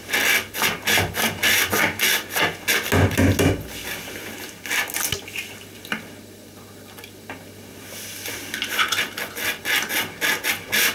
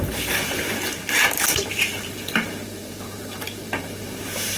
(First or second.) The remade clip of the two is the second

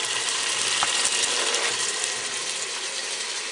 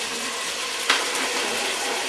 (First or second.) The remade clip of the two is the second